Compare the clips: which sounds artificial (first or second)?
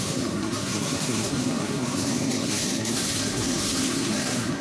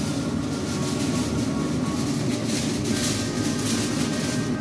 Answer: first